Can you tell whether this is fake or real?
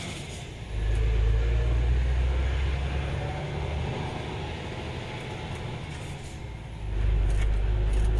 real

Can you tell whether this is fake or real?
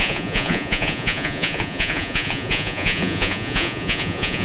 fake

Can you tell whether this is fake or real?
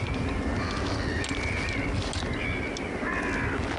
real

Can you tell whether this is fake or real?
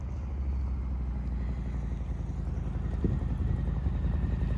real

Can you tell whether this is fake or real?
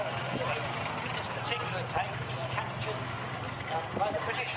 real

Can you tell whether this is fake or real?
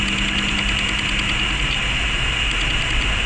real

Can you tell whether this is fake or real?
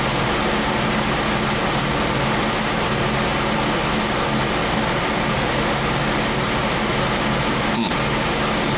real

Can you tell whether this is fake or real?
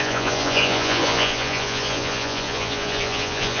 fake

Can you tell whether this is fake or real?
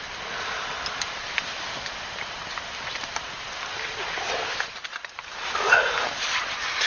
real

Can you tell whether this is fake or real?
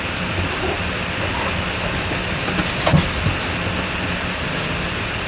real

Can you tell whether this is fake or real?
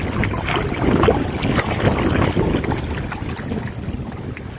real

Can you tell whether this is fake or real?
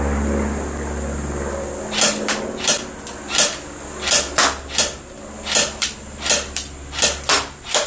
real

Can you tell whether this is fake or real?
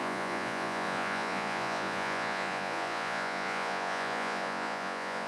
fake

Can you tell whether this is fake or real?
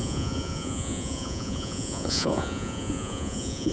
fake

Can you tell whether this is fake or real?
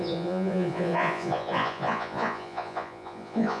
fake